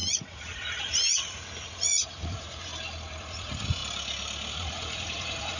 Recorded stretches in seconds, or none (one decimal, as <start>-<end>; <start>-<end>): 2.7-3.2; 3.8-4.5